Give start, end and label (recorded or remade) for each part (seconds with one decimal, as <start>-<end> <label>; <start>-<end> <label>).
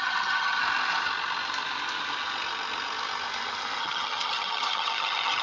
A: 0.0-0.6 remade; 0.6-3.8 recorded; 3.8-5.4 remade